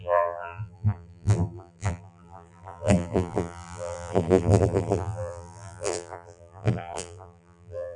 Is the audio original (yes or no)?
no